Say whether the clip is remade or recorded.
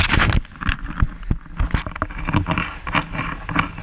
recorded